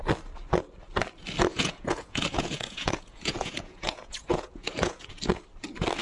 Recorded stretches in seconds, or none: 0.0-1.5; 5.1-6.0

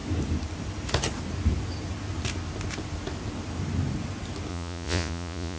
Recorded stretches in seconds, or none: 0.0-4.5

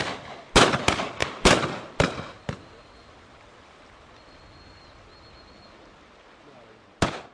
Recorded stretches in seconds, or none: 0.0-7.3

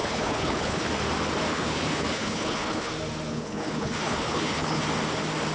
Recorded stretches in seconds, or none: 0.9-1.5; 2.9-3.3; 4.8-5.5

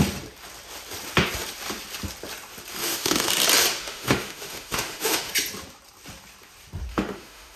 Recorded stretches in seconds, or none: 0.0-2.8; 3.3-3.7; 5.3-6.9

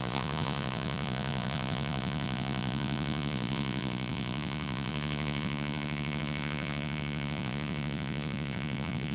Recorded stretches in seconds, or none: none

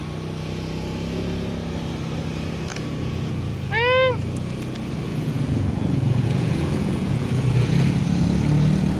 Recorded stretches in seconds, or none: 0.0-2.7; 3.7-5.1; 7.9-9.0